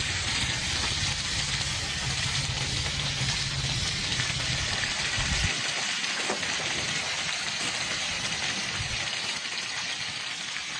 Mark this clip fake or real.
real